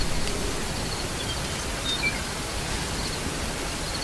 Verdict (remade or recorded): recorded